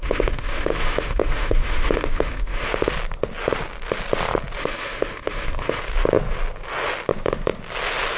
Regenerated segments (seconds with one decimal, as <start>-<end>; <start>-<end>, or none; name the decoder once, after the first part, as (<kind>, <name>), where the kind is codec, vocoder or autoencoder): 0.0-2.7 (autoencoder, DAC-VAE); 4.6-5.8